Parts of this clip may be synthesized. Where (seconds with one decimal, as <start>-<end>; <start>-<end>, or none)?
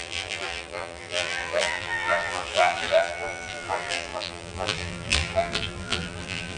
0.0-6.6